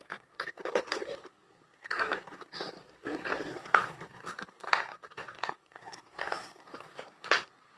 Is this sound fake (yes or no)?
yes